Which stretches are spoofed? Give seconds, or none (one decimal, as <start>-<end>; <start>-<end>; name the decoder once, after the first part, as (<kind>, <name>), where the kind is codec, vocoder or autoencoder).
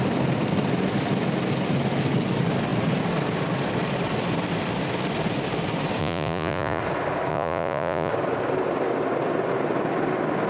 6.0-6.8 (vocoder, Vocos); 7.3-8.1